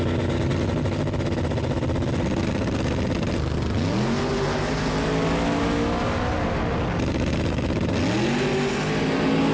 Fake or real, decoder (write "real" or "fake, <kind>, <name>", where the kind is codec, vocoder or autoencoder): real